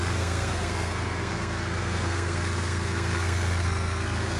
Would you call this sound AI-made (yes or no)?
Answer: yes